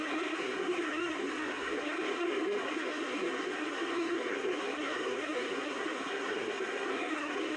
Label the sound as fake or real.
fake